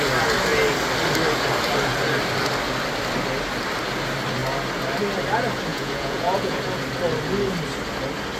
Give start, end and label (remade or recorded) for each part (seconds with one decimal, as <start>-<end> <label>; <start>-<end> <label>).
0.0-5.7 recorded; 5.7-6.6 remade; 6.6-8.4 recorded